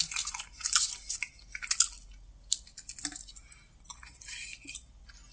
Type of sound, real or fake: real